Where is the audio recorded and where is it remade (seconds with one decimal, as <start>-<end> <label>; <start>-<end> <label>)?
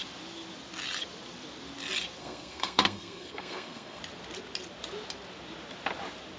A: 0.0-2.2 recorded; 2.2-4.0 remade; 4.0-6.4 recorded